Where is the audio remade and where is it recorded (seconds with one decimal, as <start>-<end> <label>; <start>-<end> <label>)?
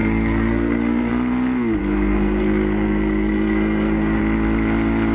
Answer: 0.0-1.1 remade; 1.1-1.8 recorded; 1.8-4.2 remade; 4.2-5.1 recorded